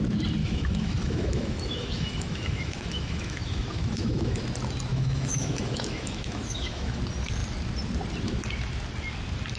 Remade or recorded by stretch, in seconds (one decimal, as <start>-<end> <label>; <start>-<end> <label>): 0.0-0.4 recorded; 0.4-4.4 remade; 4.4-4.9 recorded; 4.9-7.0 remade; 7.0-9.6 recorded